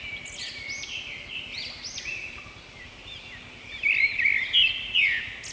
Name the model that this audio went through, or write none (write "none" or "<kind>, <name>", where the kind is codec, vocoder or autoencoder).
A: none